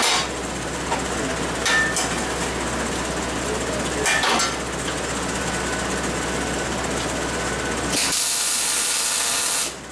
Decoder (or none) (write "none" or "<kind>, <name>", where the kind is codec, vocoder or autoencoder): none